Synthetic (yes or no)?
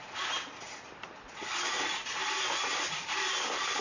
no